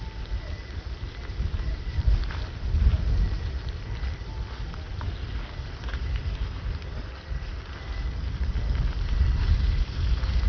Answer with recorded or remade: recorded